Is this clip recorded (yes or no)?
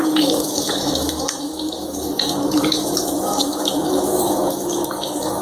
no